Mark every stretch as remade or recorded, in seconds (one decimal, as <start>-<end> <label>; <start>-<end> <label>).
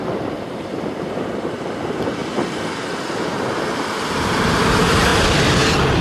0.0-2.2 remade; 2.2-3.3 recorded; 3.3-5.1 remade; 5.1-6.0 recorded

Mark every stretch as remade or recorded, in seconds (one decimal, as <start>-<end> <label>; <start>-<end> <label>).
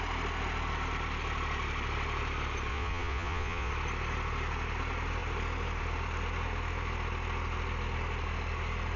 0.0-2.7 recorded; 2.7-3.7 remade; 3.7-9.0 recorded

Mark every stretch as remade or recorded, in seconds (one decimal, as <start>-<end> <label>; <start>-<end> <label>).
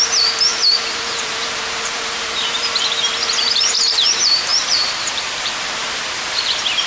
0.0-6.9 remade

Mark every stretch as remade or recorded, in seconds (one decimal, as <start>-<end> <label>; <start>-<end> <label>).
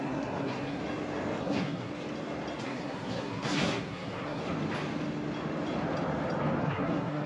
0.0-0.8 remade; 0.8-1.4 recorded; 1.4-1.9 remade; 1.9-2.6 recorded; 2.6-4.4 remade; 4.4-6.6 recorded; 6.6-7.3 remade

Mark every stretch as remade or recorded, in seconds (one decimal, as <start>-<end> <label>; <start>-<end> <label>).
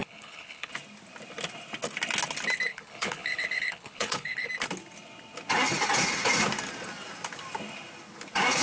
0.0-0.7 remade; 0.7-2.7 recorded; 2.7-4.5 remade; 4.5-8.6 recorded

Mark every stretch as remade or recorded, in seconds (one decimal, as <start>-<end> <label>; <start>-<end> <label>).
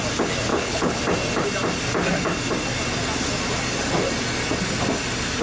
0.0-0.5 recorded; 0.5-1.0 remade; 1.0-5.4 recorded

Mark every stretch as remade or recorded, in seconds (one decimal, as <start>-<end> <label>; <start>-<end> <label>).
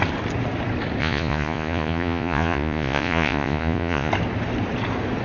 0.0-1.0 recorded; 1.0-4.1 remade; 4.1-5.2 recorded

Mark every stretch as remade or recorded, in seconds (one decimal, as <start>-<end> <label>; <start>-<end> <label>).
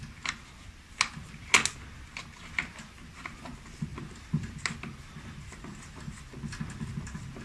0.0-7.4 recorded